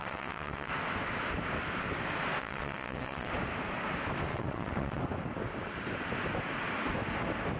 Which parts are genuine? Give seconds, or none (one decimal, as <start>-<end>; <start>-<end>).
0.7-2.4; 3.3-4.3; 5.0-7.6